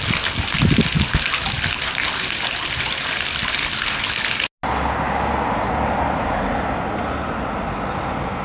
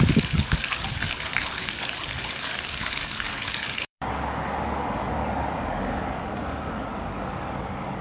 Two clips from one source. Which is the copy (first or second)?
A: second